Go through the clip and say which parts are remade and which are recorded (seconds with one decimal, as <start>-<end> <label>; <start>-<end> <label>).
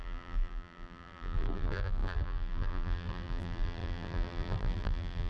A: 0.0-5.3 remade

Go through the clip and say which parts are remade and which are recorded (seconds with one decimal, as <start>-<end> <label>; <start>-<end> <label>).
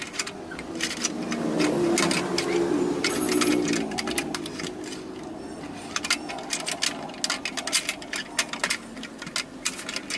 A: 0.0-10.2 recorded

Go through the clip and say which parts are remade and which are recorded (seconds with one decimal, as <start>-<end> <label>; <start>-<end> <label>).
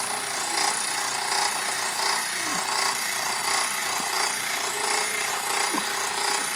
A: 0.0-2.5 recorded; 2.5-3.4 remade; 3.4-3.8 recorded; 3.8-5.3 remade; 5.3-6.6 recorded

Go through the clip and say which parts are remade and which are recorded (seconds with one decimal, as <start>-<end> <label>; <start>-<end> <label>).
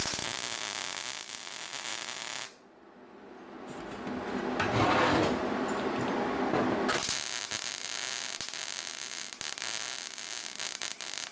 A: 0.0-11.3 recorded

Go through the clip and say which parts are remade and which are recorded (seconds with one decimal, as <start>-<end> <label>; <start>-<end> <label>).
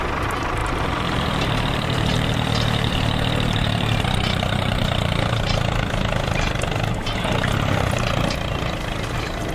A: 0.0-0.6 recorded; 0.6-5.3 remade; 5.3-9.5 recorded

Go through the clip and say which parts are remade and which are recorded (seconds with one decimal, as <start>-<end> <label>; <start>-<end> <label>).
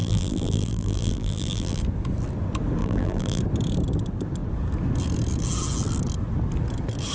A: 0.0-1.8 remade; 1.8-2.8 recorded; 2.8-3.4 remade; 3.4-7.1 recorded